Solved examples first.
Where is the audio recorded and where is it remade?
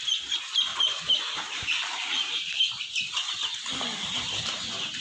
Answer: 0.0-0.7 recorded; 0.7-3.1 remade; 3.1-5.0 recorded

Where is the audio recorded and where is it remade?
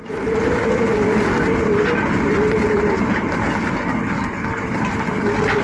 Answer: 0.0-5.6 recorded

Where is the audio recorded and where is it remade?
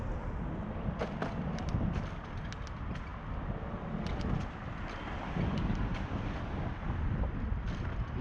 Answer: 0.0-1.0 recorded; 1.0-2.0 remade; 2.0-8.2 recorded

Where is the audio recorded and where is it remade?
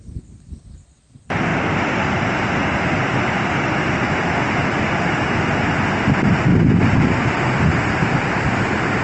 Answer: 0.0-1.5 recorded; 1.5-4.4 remade; 4.4-9.0 recorded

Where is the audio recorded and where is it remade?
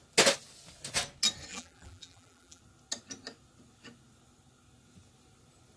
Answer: 0.0-1.5 recorded; 1.5-2.6 remade; 2.6-5.8 recorded